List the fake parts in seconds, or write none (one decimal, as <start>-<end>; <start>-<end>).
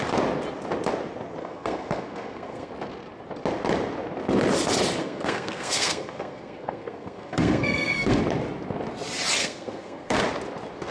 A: 1.4-2.7; 5.0-8.2; 9.4-10.2